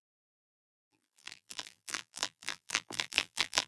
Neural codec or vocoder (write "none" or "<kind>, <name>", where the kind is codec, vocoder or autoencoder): vocoder, BigVGAN v2